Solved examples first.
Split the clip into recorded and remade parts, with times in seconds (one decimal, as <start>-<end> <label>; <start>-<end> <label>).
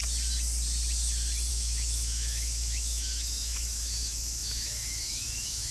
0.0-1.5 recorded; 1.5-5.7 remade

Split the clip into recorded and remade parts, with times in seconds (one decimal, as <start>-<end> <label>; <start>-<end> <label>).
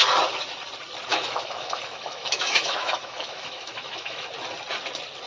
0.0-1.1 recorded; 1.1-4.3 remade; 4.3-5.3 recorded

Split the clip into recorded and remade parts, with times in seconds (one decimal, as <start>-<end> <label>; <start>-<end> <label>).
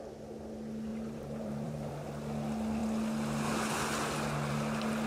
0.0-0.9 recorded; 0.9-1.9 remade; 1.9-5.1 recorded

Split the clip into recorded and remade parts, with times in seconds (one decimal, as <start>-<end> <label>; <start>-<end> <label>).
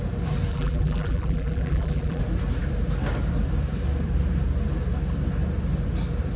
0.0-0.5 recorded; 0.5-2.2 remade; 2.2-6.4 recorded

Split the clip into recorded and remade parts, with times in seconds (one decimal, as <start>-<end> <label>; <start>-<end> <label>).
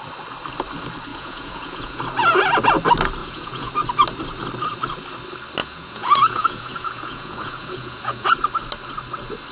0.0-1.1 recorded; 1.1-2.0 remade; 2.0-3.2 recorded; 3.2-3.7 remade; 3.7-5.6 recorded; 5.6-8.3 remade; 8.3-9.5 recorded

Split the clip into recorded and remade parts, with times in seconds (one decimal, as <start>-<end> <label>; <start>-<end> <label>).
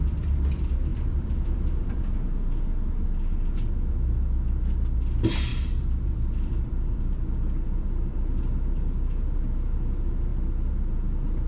0.0-0.9 recorded; 0.9-2.0 remade; 2.0-5.5 recorded; 5.5-9.4 remade; 9.4-11.5 recorded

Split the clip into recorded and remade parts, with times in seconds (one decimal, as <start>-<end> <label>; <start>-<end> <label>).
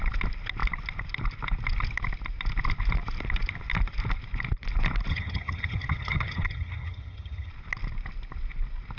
0.0-5.1 recorded; 5.1-7.5 remade; 7.5-9.0 recorded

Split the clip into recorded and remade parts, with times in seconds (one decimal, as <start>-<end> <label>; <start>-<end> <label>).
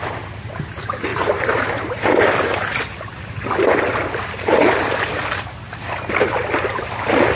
0.0-1.1 recorded; 1.1-2.2 remade; 2.2-7.4 recorded